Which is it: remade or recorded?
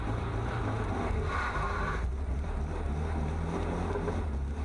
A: recorded